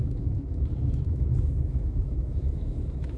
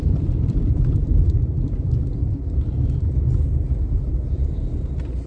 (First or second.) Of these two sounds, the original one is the second